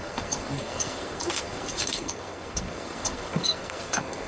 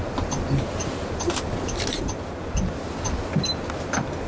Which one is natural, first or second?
second